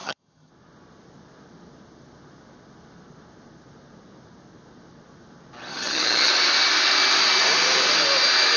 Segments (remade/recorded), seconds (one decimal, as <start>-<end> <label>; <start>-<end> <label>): 0.0-0.5 remade; 0.5-5.7 recorded; 5.7-6.3 remade; 6.3-8.6 recorded